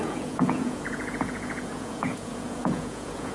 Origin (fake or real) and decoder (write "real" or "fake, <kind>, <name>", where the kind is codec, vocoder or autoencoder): fake, vocoder, Vocos